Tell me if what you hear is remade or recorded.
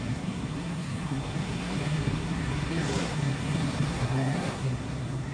remade